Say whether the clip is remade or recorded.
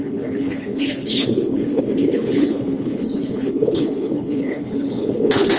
remade